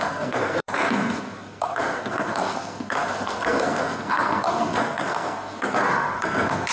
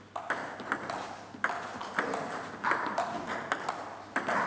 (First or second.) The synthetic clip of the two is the first